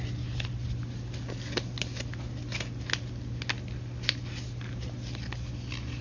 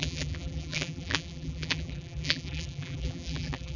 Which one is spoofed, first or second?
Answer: second